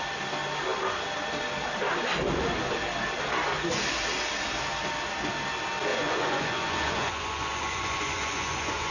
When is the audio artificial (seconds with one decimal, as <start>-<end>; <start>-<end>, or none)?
5.9-8.9